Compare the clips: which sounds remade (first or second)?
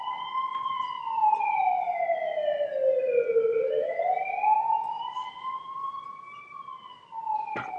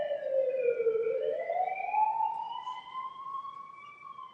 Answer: second